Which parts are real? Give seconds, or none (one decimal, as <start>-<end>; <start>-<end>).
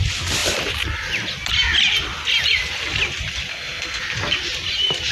0.0-3.5; 4.0-5.1